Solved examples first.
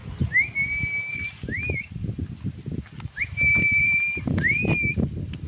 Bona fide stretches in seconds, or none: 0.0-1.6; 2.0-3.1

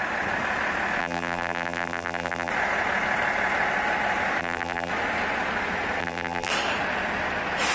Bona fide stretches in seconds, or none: 0.0-1.0; 2.5-4.4; 4.9-6.0; 6.5-7.7